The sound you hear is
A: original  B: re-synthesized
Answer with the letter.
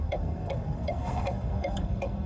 B